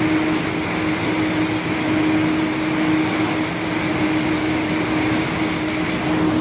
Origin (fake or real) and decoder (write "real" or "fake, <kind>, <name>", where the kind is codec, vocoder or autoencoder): real